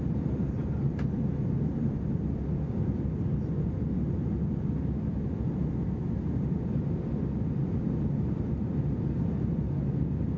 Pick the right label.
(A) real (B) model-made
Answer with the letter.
A